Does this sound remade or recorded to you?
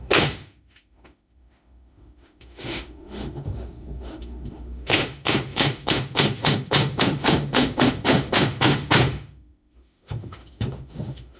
remade